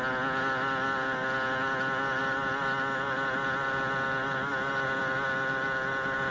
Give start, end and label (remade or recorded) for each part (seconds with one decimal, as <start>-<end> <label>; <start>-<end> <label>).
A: 0.0-6.3 recorded